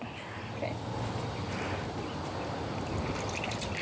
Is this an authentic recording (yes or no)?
yes